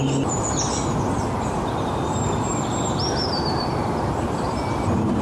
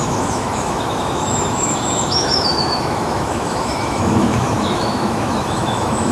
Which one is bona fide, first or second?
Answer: first